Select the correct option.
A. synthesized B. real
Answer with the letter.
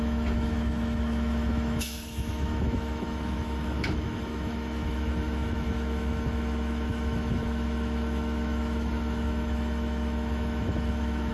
A